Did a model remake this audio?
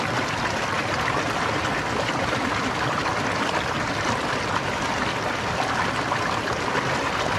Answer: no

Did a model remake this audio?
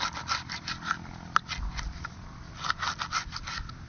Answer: no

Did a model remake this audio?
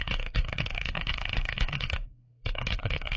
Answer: yes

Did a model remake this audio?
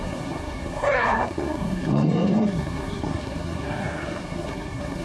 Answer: yes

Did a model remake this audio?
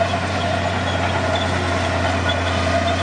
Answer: no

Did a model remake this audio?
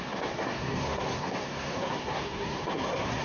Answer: yes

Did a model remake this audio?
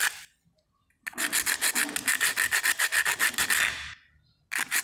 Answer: no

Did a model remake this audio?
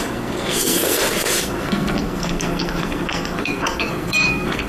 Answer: yes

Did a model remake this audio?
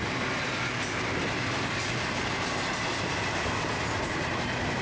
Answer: no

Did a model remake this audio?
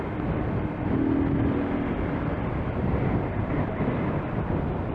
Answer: no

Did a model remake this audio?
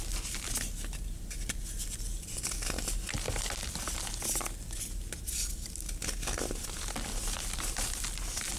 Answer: no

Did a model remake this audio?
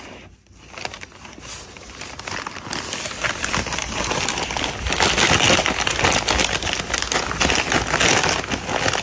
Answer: no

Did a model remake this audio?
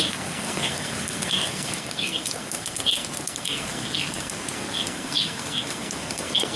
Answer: yes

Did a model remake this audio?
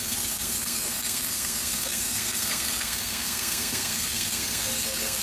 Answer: yes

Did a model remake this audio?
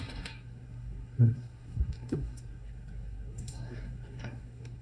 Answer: yes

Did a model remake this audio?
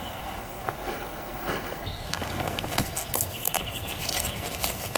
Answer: yes